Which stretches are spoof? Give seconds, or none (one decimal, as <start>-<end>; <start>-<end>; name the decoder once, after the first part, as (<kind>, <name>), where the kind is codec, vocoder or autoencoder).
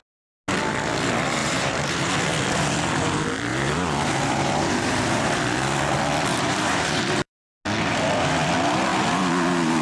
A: 1.4-2.1 (vocoder, BigVGAN v2); 3.5-5.4; 6.3-7.3